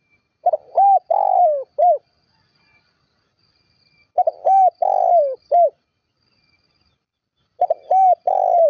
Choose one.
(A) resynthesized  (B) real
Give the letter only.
B